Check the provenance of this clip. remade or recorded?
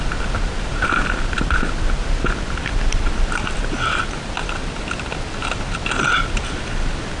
recorded